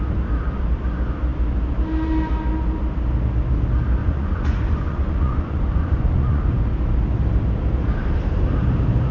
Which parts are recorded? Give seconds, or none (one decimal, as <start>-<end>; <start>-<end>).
0.0-4.0; 6.6-9.1